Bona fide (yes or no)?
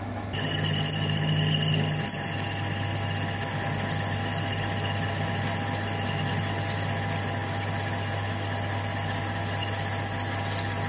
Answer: yes